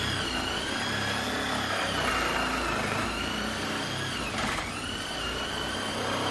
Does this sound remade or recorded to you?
remade